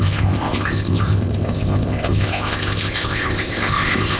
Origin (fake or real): fake